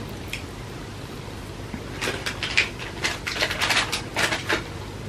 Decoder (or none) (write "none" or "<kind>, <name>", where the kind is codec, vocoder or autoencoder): vocoder, BigVGAN v2